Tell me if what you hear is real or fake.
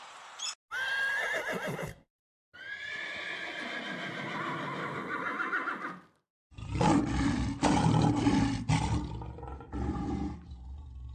real